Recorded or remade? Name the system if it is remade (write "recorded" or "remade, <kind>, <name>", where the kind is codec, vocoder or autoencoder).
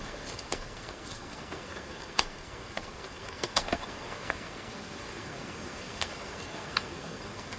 remade, codec, SNAC